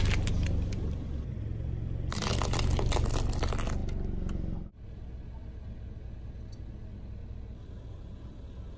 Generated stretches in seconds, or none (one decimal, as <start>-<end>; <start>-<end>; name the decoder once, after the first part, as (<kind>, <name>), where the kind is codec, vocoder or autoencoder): none